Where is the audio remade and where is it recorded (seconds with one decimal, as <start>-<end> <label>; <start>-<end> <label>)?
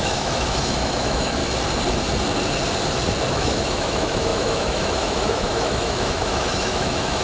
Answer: 0.0-1.4 remade; 1.4-3.3 recorded; 3.3-7.2 remade